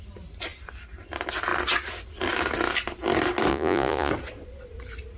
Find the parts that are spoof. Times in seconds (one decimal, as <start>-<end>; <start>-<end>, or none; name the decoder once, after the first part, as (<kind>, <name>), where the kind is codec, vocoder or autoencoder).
3.5-4.1 (vocoder, Vocos)